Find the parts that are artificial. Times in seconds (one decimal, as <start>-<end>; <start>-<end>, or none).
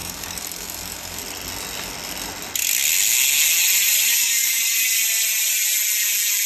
0.0-1.2; 4.1-4.6